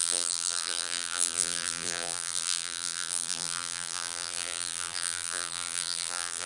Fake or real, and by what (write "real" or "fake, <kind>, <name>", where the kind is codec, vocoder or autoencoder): fake, vocoder, BigVGAN v2